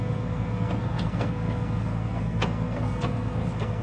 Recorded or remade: remade